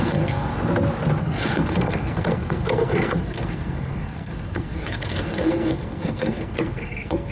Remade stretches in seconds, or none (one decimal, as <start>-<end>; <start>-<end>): 0.0-0.5; 1.2-7.3